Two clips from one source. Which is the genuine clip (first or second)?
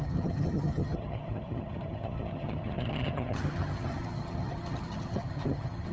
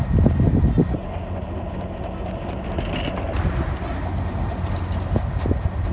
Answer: second